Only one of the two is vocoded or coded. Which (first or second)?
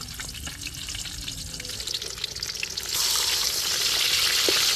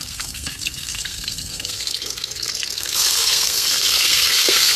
second